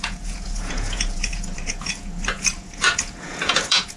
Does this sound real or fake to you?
fake